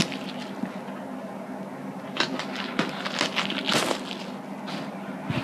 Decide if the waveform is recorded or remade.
recorded